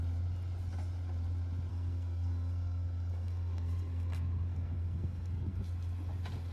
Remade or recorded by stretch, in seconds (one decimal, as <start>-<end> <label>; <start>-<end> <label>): 0.0-1.7 recorded; 1.7-5.6 remade; 5.6-6.5 recorded

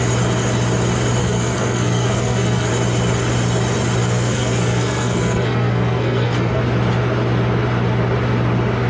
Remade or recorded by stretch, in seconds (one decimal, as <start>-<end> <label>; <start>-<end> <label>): 0.0-1.2 recorded; 1.2-2.7 remade; 2.7-4.0 recorded; 4.0-6.6 remade; 6.6-8.9 recorded

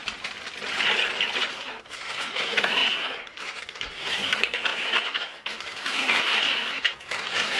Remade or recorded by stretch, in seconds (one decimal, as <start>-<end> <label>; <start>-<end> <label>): 0.0-1.5 recorded; 1.5-7.6 remade

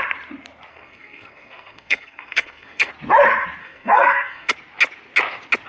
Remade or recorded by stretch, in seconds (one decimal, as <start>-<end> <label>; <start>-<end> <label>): 0.0-0.7 recorded; 0.7-2.9 remade; 2.9-3.6 recorded; 3.6-4.5 remade; 4.5-5.7 recorded

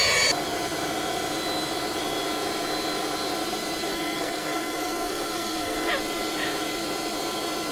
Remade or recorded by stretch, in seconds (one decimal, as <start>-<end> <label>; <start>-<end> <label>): 0.0-3.9 recorded; 3.9-5.9 remade; 5.9-7.7 recorded

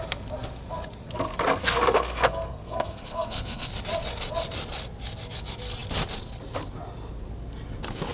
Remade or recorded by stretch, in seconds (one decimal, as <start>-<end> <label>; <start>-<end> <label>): 0.0-1.6 recorded; 1.6-3.7 remade; 3.7-8.1 recorded

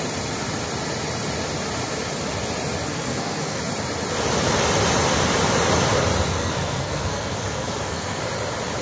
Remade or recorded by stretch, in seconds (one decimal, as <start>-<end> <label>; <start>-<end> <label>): 0.0-2.9 recorded; 2.9-3.6 remade; 3.6-6.4 recorded; 6.4-8.2 remade; 8.2-8.8 recorded